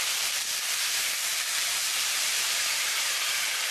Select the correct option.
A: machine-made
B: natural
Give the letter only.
A